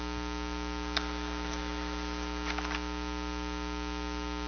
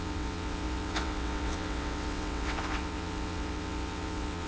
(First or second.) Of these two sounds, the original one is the first